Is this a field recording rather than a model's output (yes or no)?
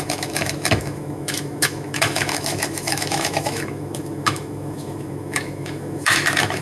no